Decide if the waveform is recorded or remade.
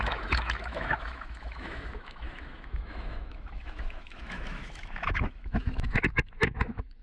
remade